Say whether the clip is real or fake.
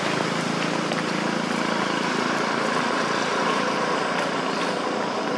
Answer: real